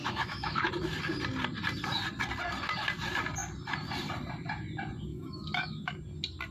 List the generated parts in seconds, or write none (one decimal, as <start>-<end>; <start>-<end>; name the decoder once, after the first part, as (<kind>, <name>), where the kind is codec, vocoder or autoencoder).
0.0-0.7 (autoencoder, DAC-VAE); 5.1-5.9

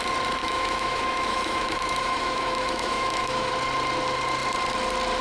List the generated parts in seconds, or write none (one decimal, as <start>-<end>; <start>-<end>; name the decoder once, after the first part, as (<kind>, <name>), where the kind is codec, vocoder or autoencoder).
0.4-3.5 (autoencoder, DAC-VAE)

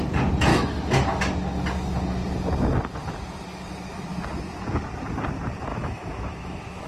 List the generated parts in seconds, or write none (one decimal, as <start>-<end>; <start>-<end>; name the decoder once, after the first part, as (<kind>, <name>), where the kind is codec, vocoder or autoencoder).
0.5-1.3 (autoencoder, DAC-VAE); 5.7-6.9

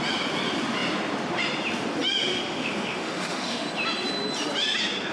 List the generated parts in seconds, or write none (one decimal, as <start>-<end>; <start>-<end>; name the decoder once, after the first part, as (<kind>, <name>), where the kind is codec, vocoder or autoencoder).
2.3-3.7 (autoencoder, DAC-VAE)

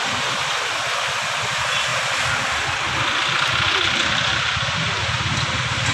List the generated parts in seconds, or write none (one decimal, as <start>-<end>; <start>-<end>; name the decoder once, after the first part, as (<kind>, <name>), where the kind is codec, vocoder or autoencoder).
none